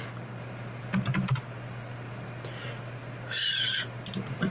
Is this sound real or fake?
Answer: real